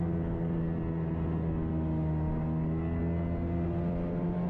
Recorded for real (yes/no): yes